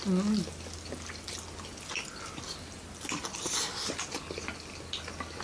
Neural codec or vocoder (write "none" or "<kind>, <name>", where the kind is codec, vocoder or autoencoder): none